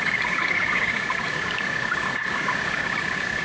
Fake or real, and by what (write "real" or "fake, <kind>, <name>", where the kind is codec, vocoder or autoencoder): fake, codec, DAC